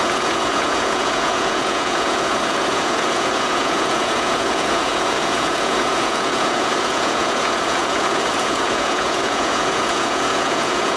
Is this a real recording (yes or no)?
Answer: no